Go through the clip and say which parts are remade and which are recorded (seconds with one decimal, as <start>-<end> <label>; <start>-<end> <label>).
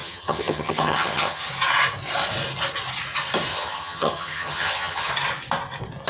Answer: 0.0-1.5 remade; 1.5-3.5 recorded; 3.5-5.1 remade; 5.1-6.1 recorded